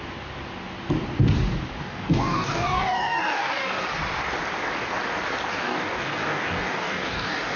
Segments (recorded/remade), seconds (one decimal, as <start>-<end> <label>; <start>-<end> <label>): 0.0-1.8 recorded; 1.8-3.8 remade; 3.8-5.5 recorded; 5.5-7.6 remade